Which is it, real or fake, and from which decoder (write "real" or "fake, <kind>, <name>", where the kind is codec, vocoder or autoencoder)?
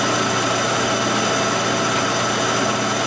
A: real